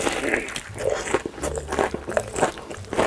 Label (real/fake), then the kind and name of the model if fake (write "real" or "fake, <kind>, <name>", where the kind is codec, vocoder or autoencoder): real